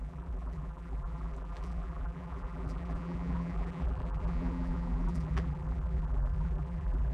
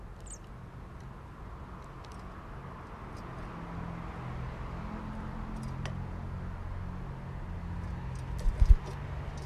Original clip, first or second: second